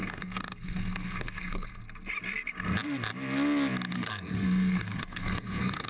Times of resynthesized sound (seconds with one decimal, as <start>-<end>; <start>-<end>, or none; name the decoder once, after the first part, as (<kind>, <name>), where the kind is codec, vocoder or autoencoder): 0.0-1.8 (codec, SNAC); 3.9-5.9